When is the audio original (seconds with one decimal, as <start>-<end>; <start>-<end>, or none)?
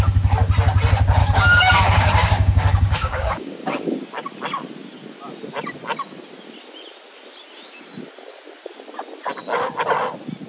0.0-1.2; 3.9-10.5